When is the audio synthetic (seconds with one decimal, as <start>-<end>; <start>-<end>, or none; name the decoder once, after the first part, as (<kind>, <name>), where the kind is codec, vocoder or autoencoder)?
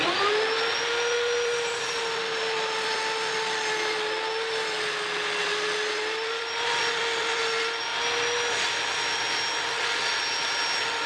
none